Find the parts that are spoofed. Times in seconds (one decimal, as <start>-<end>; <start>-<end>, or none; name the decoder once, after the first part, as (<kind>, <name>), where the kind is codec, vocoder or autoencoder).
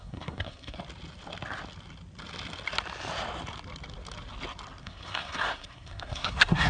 0.0-0.8 (codec, SNAC); 4.8-6.7